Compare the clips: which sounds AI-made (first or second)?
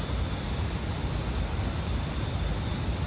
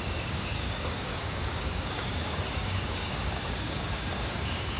second